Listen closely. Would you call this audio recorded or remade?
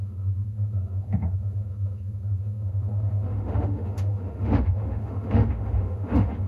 remade